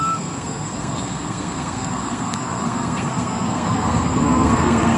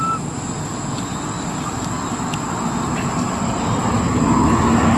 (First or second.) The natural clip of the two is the second